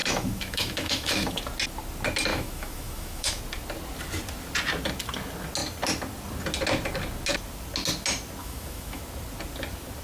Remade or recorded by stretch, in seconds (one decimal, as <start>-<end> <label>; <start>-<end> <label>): 0.0-1.4 remade; 1.4-2.3 recorded; 2.3-3.4 remade; 3.4-8.4 recorded; 8.4-9.0 remade; 9.0-10.0 recorded